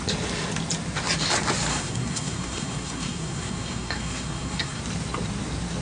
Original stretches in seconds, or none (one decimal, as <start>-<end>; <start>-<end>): 0.0-1.7; 4.8-5.8